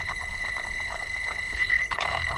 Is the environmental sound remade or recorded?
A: remade